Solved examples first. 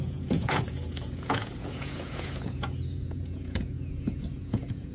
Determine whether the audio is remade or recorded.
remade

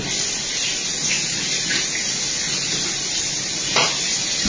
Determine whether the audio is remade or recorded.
recorded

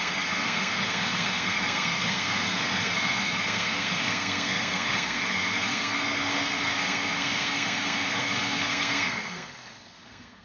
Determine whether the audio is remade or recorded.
remade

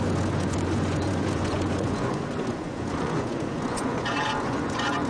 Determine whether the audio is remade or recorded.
remade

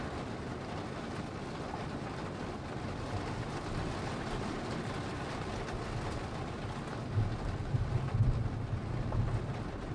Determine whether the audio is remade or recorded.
recorded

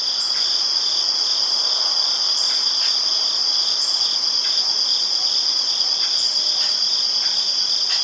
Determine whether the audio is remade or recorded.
recorded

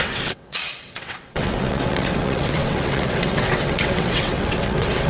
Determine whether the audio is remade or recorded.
remade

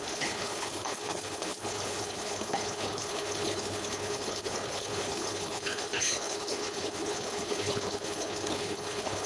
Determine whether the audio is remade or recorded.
remade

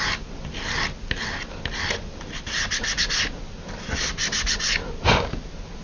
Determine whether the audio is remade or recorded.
recorded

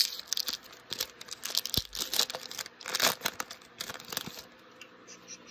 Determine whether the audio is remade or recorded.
recorded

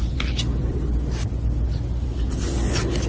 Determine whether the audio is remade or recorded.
recorded